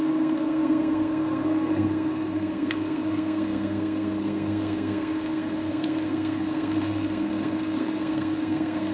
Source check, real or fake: fake